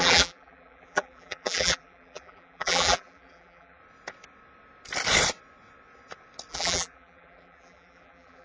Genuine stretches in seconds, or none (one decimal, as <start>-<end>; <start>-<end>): 3.8-6.5